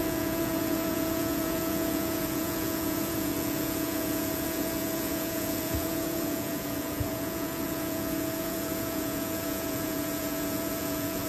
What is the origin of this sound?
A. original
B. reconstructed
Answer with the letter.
B